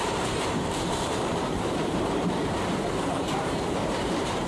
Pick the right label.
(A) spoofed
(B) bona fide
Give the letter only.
A